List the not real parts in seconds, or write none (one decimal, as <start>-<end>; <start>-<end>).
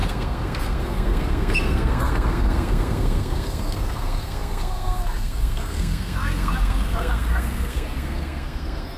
0.0-9.0